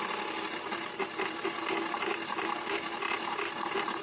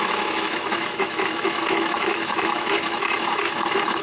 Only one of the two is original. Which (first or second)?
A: first